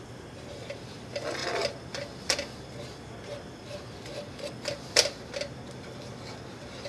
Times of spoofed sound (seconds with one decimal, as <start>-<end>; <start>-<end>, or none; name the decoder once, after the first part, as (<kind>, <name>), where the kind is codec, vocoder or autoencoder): none